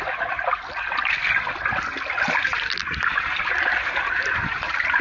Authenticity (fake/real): real